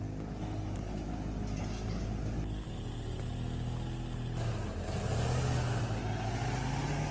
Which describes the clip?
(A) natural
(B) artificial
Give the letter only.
A